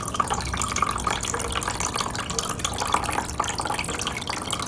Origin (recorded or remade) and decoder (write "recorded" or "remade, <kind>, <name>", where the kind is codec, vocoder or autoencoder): recorded